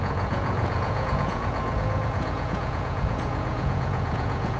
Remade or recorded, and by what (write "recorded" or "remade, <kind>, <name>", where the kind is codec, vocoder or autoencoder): remade, vocoder, Vocos